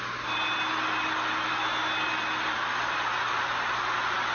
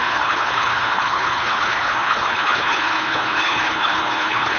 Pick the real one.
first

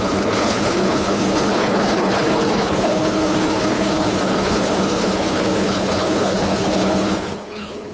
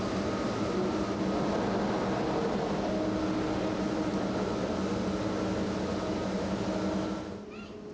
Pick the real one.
second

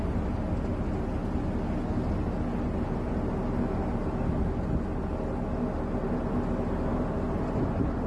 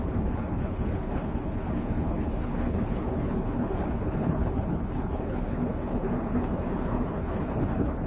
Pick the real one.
first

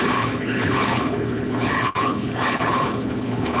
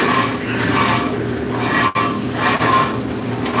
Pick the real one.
second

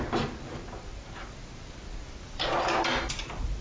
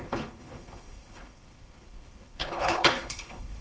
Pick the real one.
first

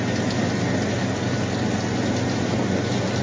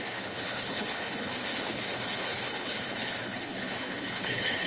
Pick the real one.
first